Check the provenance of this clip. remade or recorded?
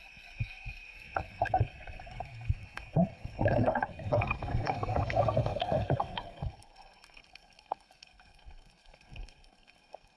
remade